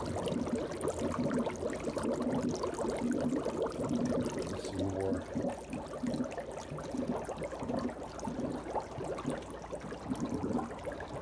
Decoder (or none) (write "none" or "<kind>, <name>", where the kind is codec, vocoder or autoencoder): none